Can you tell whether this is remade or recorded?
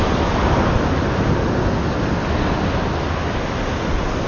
recorded